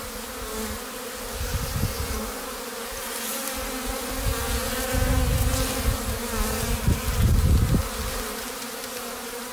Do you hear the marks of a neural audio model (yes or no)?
no